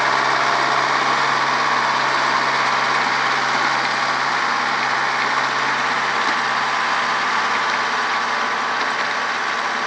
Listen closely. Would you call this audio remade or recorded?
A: recorded